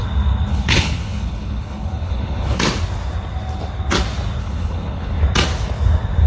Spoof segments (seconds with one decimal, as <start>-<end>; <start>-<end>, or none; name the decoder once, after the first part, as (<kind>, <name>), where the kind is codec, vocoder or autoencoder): 0.5-2.6 (codec, HILCodec); 4.4-5.2